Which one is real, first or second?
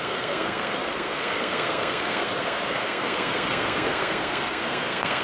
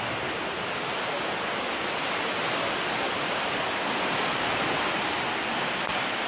second